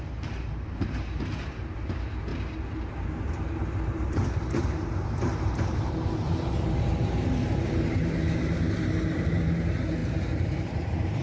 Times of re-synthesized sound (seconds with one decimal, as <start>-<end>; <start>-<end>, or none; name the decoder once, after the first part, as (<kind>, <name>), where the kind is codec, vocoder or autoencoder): 0.0-2.3 (vocoder, BigVGAN v2); 2.9-11.2